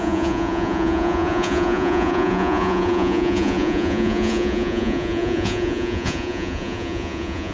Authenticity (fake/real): fake